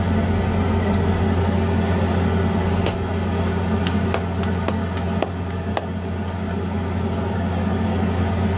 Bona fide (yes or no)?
yes